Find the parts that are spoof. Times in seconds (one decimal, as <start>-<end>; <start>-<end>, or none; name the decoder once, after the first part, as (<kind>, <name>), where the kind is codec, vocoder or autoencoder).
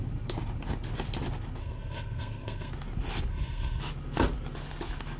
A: 1.6-2.7 (codec, SNAC); 3.3-3.8